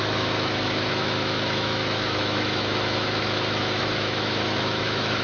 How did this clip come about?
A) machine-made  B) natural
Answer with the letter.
A